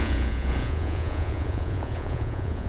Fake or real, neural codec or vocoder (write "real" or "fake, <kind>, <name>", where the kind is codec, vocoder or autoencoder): fake, vocoder, Vocos